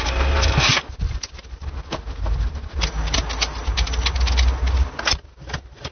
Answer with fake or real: real